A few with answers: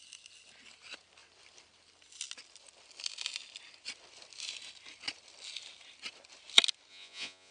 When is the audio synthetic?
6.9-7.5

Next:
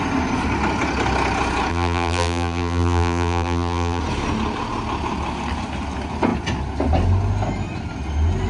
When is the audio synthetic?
1.7-4.0

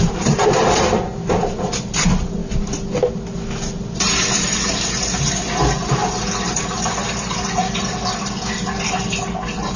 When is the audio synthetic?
none

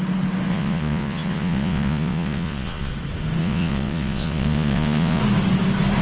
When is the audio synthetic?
0.5-2.9; 3.4-5.2

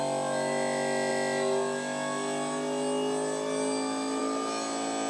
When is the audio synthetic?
none

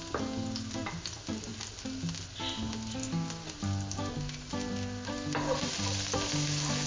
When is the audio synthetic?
none

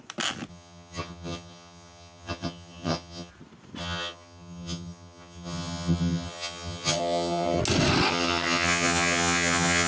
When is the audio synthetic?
0.5-3.3; 3.8-7.6; 8.1-9.9